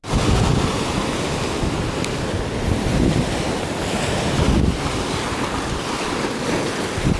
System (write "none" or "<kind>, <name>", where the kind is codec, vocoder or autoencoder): none